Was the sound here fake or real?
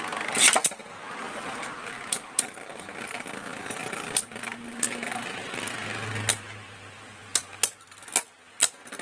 real